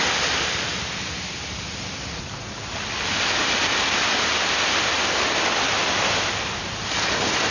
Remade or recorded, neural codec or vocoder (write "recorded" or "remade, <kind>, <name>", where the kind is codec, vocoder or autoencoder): recorded